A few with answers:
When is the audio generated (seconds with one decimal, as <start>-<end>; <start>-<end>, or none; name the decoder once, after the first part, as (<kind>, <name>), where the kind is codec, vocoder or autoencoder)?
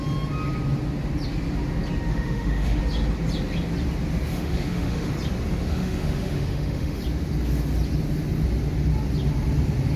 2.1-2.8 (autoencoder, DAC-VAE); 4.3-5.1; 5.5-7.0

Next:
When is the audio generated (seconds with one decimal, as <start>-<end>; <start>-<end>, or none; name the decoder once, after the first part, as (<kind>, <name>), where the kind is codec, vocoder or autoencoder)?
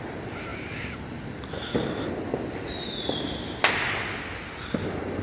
none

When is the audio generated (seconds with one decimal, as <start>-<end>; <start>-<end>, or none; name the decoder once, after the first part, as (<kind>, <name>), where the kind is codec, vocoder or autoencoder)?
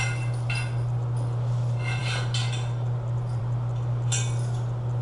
none